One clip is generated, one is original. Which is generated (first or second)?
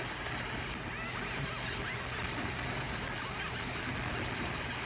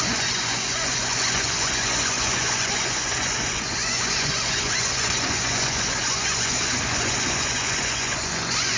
second